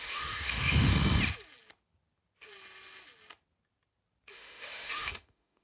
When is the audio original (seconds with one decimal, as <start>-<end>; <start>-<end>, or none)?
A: 0.9-4.3